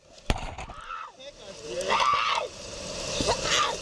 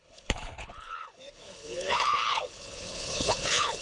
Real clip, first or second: first